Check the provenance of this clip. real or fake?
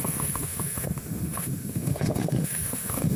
fake